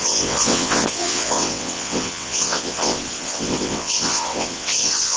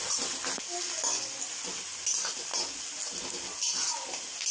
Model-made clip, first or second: first